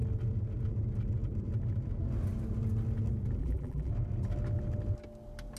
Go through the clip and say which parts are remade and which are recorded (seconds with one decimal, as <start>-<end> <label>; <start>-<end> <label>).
0.0-3.4 recorded; 3.4-3.9 remade; 3.9-5.6 recorded